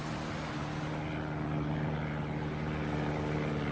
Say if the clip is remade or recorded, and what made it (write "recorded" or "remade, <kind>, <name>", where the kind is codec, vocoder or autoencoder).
recorded